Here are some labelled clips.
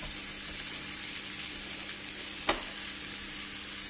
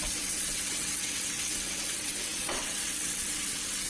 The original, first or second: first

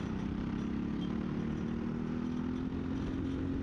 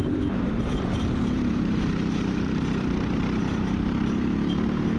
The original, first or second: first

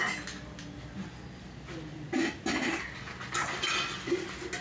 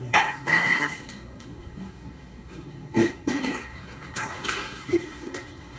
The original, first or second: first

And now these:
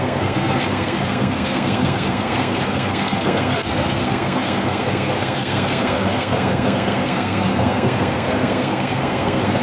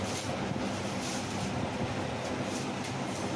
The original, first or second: second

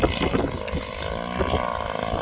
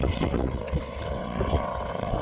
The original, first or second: first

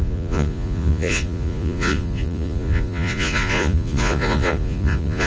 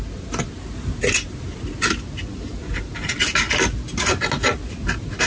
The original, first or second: second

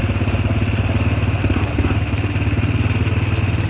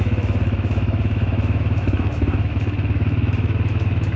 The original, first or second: first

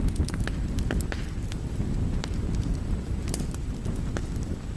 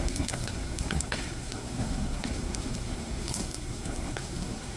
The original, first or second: first